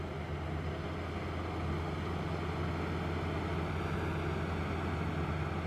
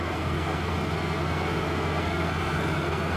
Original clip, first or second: first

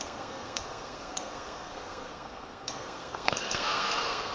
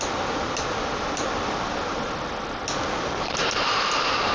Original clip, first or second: second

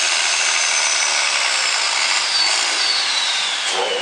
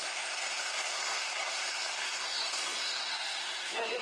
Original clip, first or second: first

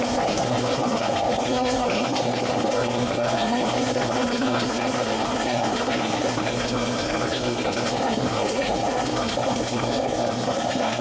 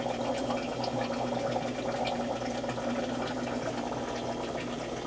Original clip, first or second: second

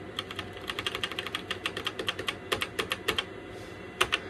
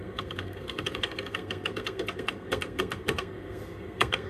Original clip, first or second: first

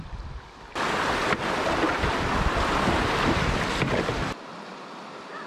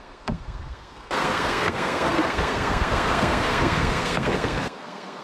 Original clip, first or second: first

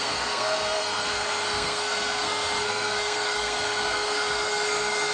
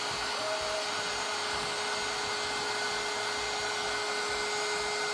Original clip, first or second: second